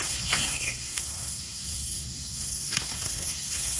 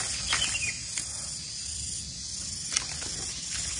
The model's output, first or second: first